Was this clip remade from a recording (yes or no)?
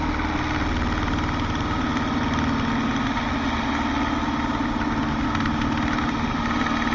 no